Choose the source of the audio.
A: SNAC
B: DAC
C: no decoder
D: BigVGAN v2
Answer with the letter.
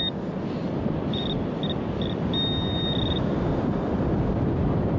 C